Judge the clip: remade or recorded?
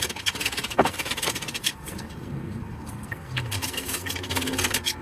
remade